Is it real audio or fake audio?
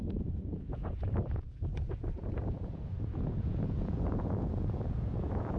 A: fake